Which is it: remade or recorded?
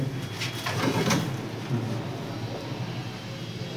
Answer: recorded